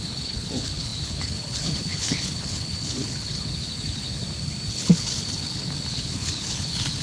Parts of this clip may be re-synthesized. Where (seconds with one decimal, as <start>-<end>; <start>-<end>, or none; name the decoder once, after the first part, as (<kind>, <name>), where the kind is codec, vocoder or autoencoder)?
0.0-4.2 (codec, HILCodec); 4.7-7.0